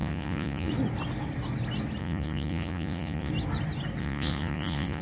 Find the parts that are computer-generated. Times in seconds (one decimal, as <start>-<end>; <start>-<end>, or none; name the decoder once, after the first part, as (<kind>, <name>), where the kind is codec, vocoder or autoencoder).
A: 0.0-0.7 (vocoder, Vocos); 2.0-3.3; 4.0-5.0